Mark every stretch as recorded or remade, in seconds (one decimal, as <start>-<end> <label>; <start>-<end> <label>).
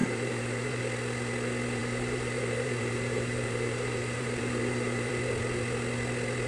0.0-0.8 remade; 0.8-1.8 recorded; 1.8-5.1 remade; 5.1-6.5 recorded